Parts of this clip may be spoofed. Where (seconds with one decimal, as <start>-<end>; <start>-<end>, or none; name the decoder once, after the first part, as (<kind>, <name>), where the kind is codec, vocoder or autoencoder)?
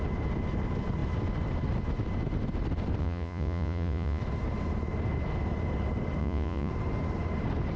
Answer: 3.0-4.2 (vocoder, Vocos); 6.2-6.7